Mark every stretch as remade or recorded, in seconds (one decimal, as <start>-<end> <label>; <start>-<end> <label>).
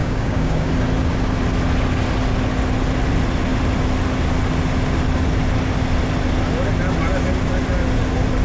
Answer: 0.0-0.7 remade; 0.7-8.4 recorded